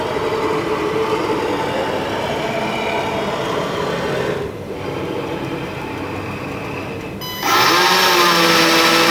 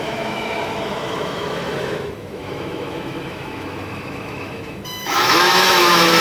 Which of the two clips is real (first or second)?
first